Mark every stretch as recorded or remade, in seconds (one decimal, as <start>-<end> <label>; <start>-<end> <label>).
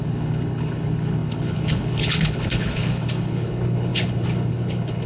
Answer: 0.0-5.1 remade